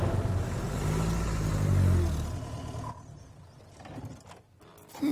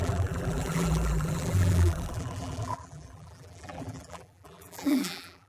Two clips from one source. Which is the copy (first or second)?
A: second